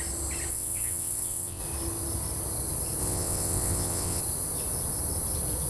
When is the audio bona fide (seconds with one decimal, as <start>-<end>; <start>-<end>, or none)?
0.0-0.5; 1.6-3.0; 4.2-5.7